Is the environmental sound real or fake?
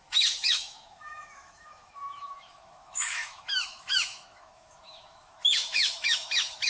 fake